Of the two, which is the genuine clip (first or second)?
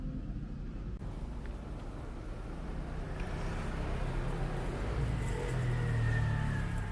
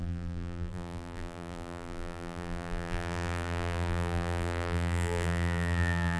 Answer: first